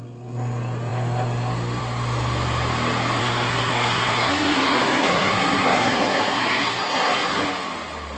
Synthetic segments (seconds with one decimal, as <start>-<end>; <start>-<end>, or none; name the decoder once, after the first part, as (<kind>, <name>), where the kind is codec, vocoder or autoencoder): 3.2-7.4 (codec, SNAC)